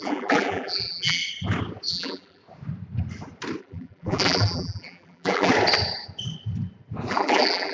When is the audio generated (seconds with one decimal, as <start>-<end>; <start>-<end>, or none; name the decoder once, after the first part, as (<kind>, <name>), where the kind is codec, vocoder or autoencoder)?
0.0-1.2 (vocoder, BigVGAN v2); 1.9-2.4; 3.6-5.5; 7.1-7.7